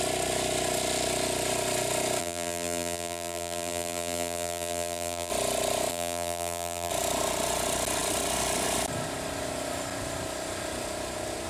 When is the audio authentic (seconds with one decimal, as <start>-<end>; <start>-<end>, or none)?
0.0-2.2; 5.3-5.9; 6.9-11.5